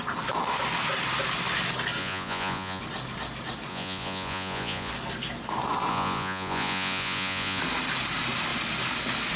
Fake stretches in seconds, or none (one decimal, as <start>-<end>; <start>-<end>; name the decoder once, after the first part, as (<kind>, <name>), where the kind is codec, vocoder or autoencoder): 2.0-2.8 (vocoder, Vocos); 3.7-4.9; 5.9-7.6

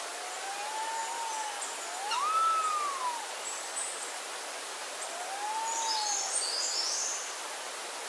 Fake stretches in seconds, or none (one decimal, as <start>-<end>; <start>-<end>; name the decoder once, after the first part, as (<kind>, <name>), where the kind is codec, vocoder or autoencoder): none

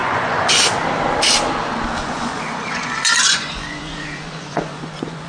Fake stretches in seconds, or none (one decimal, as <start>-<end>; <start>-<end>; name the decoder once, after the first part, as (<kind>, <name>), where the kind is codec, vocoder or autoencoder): 0.0-0.6 (vocoder, Vocos); 2.0-5.3

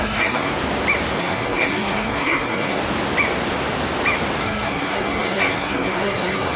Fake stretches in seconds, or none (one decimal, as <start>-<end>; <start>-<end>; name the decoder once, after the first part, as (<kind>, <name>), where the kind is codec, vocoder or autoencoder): 0.0-0.5 (codec, SNAC); 1.2-2.8; 4.4-6.6

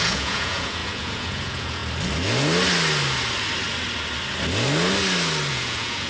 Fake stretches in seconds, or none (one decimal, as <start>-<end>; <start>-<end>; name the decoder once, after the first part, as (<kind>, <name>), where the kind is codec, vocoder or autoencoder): 0.0-1.8 (vocoder, Vocos); 5.5-6.1